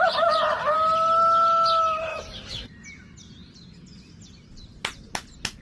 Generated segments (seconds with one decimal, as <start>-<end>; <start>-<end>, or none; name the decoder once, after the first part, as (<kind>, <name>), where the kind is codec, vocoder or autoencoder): 2.1-2.7 (autoencoder, DAC-VAE)

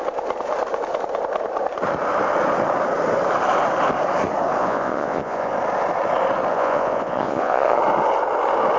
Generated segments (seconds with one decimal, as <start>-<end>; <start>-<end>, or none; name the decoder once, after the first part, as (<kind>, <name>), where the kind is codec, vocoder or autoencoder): 4.6-5.5 (vocoder, Vocos); 6.5-7.8

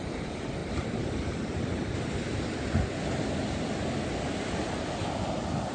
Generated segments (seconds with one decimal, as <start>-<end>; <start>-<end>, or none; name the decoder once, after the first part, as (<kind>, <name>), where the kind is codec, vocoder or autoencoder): 0.6-4.0 (vocoder, BigVGAN v2)

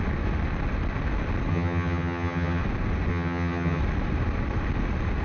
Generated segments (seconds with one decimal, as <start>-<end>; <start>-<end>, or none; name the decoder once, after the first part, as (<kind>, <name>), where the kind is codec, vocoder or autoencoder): 1.5-2.6 (vocoder, HiFi-GAN); 3.1-3.8

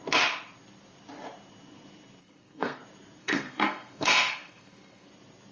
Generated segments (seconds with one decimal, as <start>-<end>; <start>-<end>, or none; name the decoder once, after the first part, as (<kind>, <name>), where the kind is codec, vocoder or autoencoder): 2.2-2.8 (codec, SNAC); 3.2-5.1

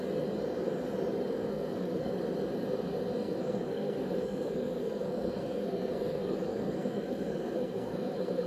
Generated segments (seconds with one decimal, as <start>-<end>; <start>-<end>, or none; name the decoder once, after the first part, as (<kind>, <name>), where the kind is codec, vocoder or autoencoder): 1.5-2.1 (codec, SNAC); 3.2-8.5

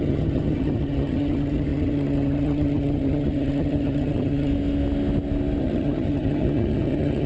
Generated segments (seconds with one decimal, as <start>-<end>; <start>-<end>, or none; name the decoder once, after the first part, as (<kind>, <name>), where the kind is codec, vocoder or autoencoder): 0.0-4.5 (vocoder, HiFi-GAN); 5.6-7.3

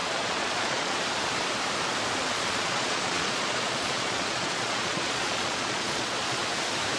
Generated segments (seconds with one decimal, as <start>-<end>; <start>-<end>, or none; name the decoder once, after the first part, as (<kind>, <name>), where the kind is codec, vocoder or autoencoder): 0.0-1.0 (vocoder, Vocos); 2.2-6.4